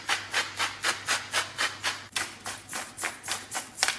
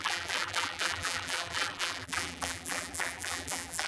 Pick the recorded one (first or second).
first